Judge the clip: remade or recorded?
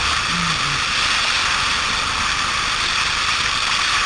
recorded